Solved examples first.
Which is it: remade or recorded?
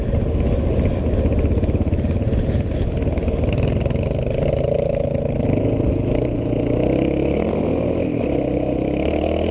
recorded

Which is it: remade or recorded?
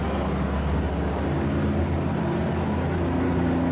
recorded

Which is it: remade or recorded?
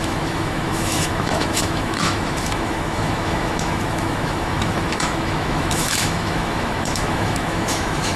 remade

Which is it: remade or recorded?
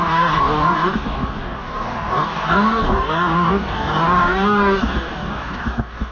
remade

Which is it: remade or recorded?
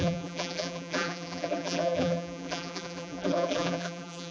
remade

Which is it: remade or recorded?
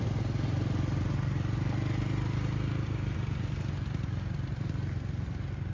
recorded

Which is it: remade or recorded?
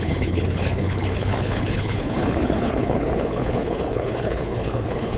remade